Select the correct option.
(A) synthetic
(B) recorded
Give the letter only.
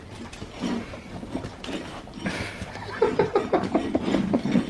B